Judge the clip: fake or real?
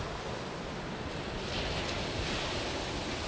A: real